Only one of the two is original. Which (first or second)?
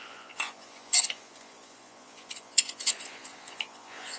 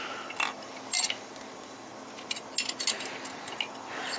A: second